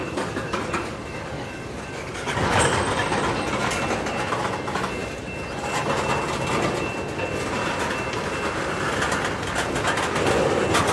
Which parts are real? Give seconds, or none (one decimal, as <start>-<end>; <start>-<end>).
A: 2.8-10.9